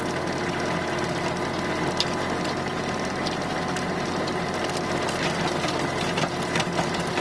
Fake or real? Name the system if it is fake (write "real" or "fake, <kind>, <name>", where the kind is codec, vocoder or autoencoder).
real